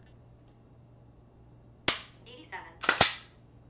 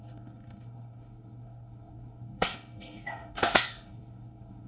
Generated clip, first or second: second